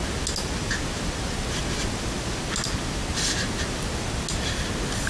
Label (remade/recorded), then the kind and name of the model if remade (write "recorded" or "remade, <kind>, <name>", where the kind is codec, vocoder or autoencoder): recorded